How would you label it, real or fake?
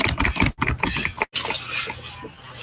real